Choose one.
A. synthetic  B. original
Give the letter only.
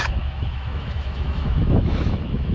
A